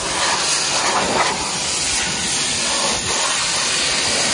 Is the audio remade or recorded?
recorded